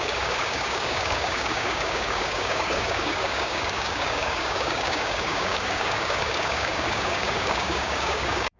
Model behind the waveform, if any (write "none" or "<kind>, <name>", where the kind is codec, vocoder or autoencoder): codec, DAC